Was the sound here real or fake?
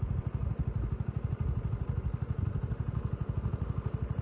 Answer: real